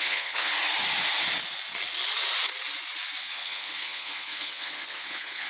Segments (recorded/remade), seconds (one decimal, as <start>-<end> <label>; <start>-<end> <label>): 0.0-0.5 remade; 0.5-3.2 recorded; 3.2-5.5 remade